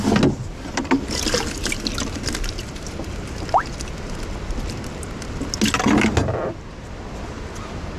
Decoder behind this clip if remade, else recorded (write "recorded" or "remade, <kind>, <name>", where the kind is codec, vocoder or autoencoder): recorded